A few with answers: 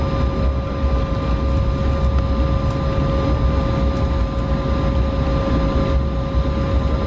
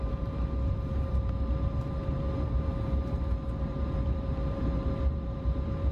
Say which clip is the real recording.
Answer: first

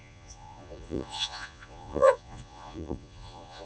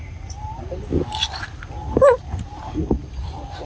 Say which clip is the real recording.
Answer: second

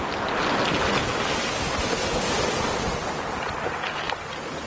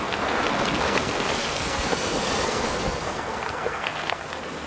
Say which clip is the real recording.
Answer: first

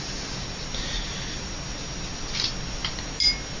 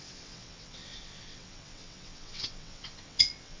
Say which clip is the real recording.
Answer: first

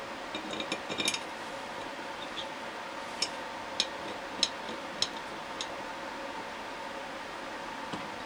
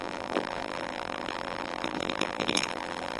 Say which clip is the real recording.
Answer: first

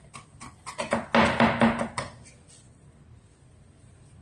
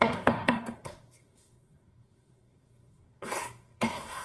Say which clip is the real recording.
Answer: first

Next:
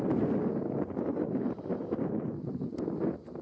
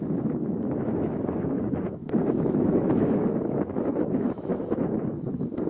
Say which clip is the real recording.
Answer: first